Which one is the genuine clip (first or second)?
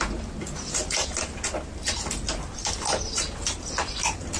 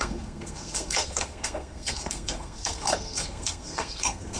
first